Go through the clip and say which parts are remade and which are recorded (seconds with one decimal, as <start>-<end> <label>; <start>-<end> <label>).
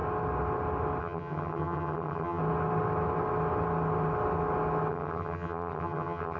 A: 0.0-1.0 recorded; 1.0-2.4 remade; 2.4-4.9 recorded; 4.9-6.4 remade